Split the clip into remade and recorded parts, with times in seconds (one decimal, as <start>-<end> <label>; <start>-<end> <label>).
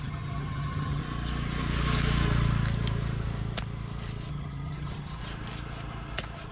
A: 0.0-1.0 remade; 1.0-4.3 recorded; 4.3-5.2 remade; 5.2-6.5 recorded